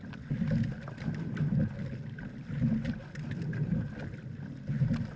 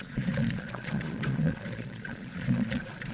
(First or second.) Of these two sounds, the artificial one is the second